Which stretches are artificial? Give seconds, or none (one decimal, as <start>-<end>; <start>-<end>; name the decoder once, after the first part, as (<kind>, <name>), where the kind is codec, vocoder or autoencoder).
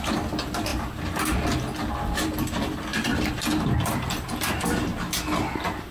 0.0-0.7 (vocoder, BigVGAN v2); 1.9-4.9